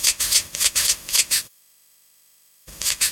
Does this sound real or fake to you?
fake